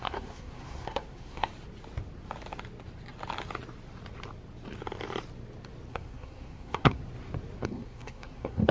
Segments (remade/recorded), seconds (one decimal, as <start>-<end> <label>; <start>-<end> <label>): 0.0-1.5 remade; 1.5-5.9 recorded; 5.9-7.0 remade; 7.0-7.6 recorded; 7.6-8.7 remade